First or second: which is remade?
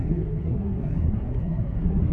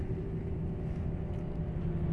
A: first